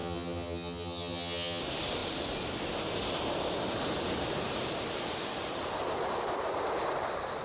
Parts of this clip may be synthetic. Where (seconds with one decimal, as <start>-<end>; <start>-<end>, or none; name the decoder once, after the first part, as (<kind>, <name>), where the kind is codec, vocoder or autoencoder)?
0.0-1.6 (vocoder, HiFi-GAN)